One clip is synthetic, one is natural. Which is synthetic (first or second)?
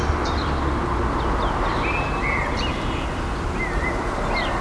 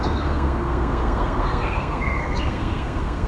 second